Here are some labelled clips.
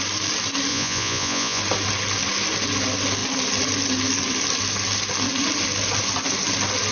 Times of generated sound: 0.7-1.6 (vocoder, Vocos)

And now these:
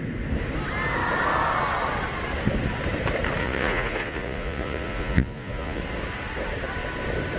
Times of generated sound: 3.4-5.8 (vocoder, Vocos)

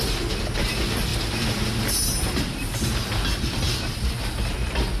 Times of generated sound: none

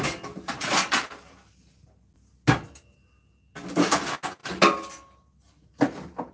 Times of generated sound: none

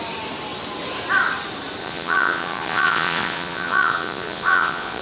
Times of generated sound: 1.8-5.0 (vocoder, Vocos)

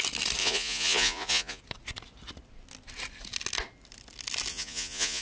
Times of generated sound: 0.4-1.6 (vocoder, Vocos); 4.5-5.2

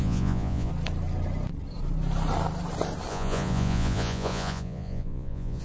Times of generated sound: 0.0-0.7 (vocoder, Vocos); 3.1-5.6